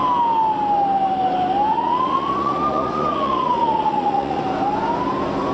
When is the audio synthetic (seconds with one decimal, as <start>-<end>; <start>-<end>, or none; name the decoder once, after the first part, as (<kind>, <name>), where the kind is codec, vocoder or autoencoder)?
1.7-4.4 (vocoder, Vocos)